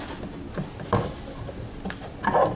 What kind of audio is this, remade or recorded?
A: recorded